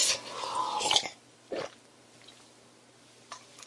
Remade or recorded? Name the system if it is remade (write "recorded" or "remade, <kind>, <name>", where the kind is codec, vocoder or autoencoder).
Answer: recorded